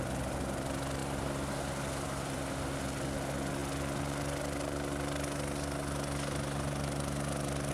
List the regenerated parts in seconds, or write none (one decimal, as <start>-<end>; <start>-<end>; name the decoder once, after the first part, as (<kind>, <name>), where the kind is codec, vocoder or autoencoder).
1.0-2.8 (vocoder, BigVGAN v2)